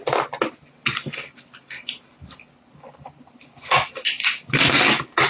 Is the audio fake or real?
real